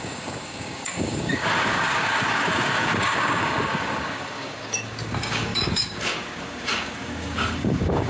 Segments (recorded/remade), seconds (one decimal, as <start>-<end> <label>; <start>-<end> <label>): 0.0-8.1 remade